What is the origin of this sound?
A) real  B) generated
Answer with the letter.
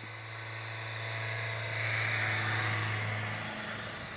A